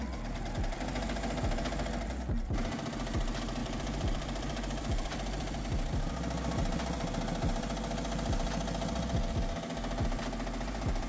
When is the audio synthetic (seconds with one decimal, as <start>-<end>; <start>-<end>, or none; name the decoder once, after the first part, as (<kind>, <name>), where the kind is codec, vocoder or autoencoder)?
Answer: 3.6-5.6 (vocoder, BigVGAN v2)